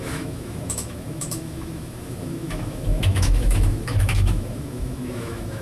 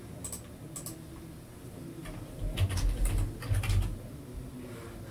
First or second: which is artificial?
first